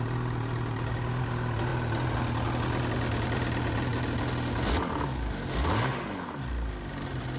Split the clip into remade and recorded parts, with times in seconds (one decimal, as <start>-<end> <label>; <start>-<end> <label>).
0.0-7.4 recorded